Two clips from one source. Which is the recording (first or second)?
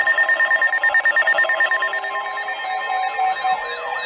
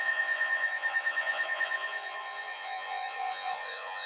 first